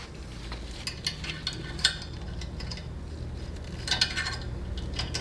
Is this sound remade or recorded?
recorded